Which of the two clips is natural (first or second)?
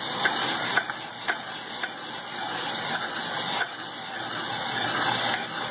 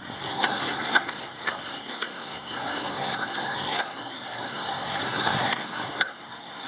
first